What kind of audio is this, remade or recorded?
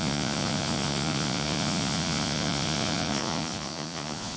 remade